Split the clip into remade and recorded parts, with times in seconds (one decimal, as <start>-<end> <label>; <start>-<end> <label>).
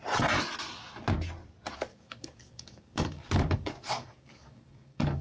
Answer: 0.0-1.9 recorded; 1.9-5.2 remade